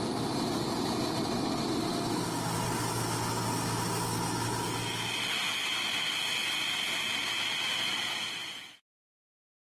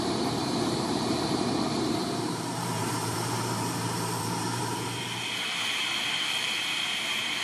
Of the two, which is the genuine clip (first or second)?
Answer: first